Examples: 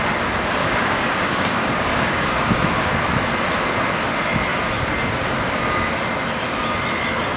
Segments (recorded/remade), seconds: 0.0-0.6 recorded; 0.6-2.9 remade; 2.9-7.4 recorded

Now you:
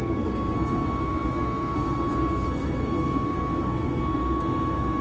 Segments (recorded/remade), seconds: 0.0-5.0 remade

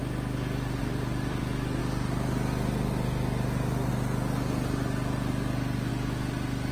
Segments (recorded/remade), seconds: 0.0-0.8 recorded; 0.8-1.4 remade; 1.4-5.9 recorded; 5.9-6.7 remade